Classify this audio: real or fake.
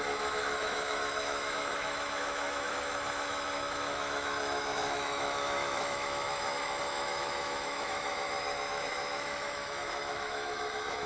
fake